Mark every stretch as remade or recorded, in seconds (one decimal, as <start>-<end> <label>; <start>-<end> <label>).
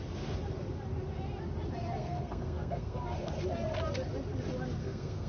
0.0-2.0 recorded; 2.0-3.3 remade; 3.3-4.8 recorded; 4.8-5.3 remade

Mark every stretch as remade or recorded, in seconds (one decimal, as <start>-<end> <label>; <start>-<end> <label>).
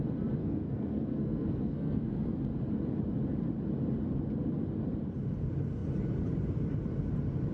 0.0-0.4 recorded; 0.4-2.4 remade; 2.4-7.5 recorded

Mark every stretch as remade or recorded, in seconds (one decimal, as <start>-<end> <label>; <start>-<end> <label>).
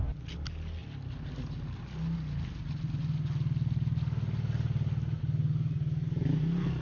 0.0-6.8 recorded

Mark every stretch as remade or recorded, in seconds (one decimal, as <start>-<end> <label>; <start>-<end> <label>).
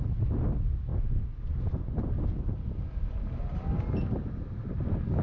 0.0-5.2 recorded